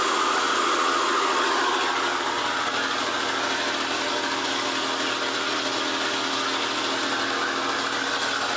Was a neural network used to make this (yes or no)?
no